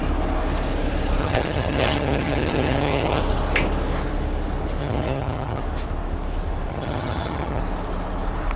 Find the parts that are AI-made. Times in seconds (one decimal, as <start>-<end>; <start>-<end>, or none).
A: 1.2-3.2; 4.8-5.6; 6.7-7.6